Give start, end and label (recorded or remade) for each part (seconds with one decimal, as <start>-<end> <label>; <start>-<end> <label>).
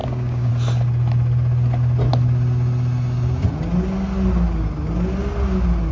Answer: 0.0-0.5 remade; 0.5-5.9 recorded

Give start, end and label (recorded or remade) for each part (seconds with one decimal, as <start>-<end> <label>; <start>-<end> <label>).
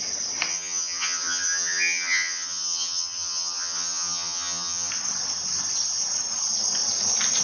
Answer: 0.0-0.5 recorded; 0.5-4.9 remade; 4.9-7.4 recorded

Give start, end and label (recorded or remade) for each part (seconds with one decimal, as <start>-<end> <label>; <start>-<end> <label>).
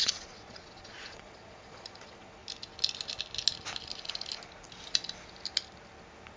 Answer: 0.0-2.4 remade; 2.4-6.4 recorded